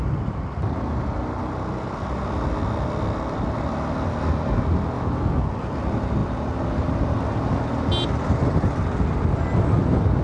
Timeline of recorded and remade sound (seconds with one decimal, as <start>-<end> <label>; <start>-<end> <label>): 0.0-10.2 recorded